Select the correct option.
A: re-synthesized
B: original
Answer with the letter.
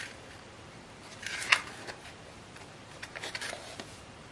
A